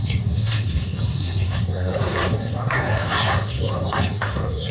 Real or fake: fake